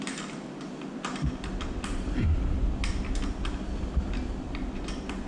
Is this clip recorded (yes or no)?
yes